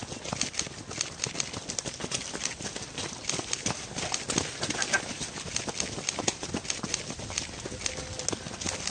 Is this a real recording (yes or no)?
yes